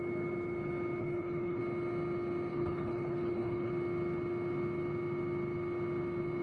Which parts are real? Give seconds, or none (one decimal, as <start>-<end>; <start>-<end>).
0.0-1.0; 1.6-2.5; 3.7-6.4